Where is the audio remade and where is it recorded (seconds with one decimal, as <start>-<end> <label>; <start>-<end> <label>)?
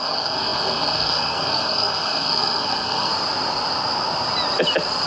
0.0-3.1 remade; 3.1-5.1 recorded